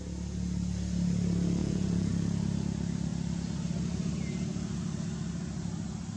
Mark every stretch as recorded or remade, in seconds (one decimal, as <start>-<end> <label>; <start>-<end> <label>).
0.0-1.6 recorded; 1.6-2.1 remade; 2.1-6.2 recorded